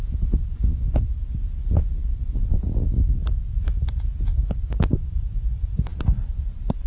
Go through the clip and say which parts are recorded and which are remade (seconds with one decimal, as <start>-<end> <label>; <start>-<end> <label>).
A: 0.0-6.9 recorded